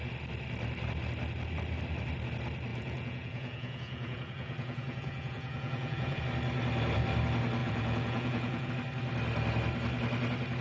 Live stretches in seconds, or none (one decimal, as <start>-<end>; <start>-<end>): 0.0-2.7; 6.2-7.6; 8.7-10.6